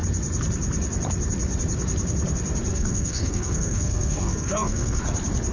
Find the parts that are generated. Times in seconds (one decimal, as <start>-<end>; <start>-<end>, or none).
2.7-5.0